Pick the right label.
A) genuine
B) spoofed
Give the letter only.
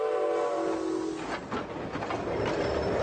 A